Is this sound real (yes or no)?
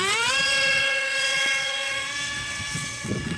no